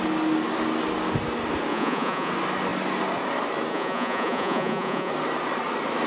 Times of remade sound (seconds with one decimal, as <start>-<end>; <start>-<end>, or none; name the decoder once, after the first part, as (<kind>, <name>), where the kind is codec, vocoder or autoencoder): 1.7-2.3 (vocoder, Vocos); 3.7-5.1